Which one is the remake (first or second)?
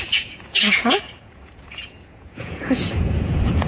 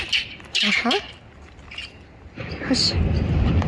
first